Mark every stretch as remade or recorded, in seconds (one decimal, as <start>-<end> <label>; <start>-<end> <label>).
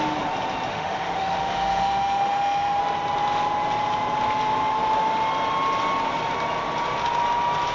0.0-0.7 recorded; 0.7-2.8 remade; 2.8-7.7 recorded